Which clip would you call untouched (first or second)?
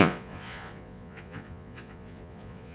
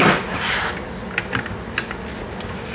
second